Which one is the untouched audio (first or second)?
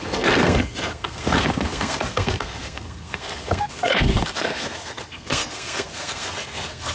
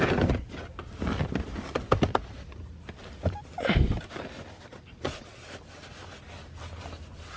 second